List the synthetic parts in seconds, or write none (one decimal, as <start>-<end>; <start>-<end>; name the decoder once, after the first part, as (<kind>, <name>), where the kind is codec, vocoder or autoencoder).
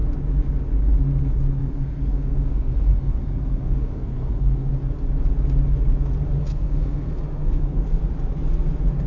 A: 1.6-4.7 (codec, SNAC); 6.4-8.0